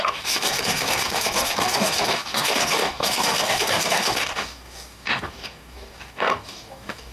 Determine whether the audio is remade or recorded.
remade